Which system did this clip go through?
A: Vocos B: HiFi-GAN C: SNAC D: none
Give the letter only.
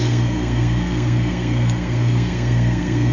C